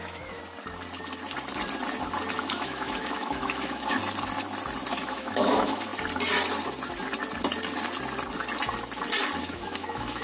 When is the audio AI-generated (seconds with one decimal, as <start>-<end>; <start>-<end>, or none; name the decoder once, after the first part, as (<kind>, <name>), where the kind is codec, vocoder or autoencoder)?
0.0-0.4 (autoencoder, DAC-VAE); 2.3-4.0; 4.9-5.9; 9.4-10.2